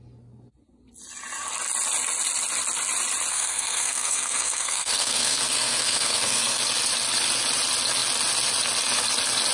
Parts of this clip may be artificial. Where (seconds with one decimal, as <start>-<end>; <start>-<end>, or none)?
3.3-6.6